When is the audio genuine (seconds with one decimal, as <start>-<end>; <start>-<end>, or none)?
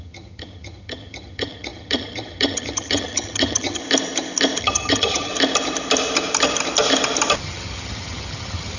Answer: 3.8-4.6; 5.3-7.4